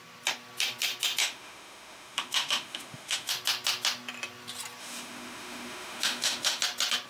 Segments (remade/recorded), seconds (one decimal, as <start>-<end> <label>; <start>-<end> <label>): 0.0-1.2 recorded; 1.2-3.3 remade; 3.3-4.8 recorded; 4.8-6.6 remade; 6.6-7.1 recorded